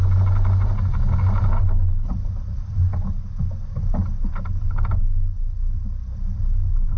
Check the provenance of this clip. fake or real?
real